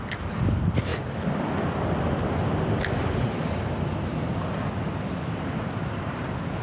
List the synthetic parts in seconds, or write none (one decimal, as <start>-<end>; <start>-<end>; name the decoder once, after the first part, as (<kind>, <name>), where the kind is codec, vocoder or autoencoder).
none